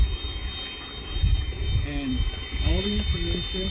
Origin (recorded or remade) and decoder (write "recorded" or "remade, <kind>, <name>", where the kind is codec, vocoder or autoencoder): recorded